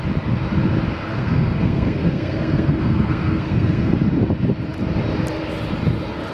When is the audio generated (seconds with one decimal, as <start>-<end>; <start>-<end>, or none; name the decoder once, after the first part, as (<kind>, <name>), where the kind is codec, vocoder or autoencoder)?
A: 1.1-3.9 (codec, SNAC)